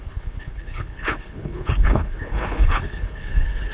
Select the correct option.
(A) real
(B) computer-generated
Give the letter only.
B